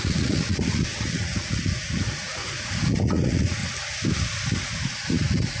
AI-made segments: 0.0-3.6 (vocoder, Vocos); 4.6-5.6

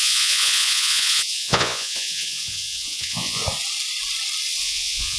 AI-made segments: 0.0-3.4 (vocoder, Vocos); 4.6-5.2

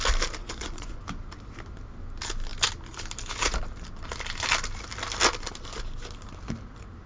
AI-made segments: 0.4-1.0 (vocoder, Vocos)

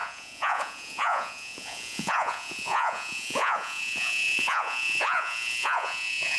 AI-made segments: 0.0-6.4 (vocoder, Vocos)

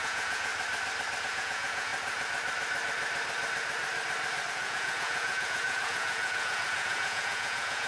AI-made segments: 0.0-0.5 (vocoder, Vocos); 1.2-1.9; 4.5-7.9

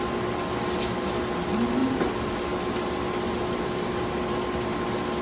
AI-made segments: none